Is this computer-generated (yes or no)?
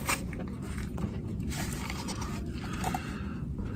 yes